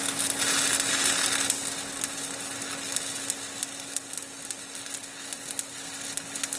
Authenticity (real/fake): real